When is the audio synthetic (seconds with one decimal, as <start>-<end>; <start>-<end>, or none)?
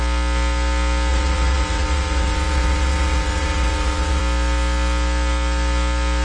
1.1-4.2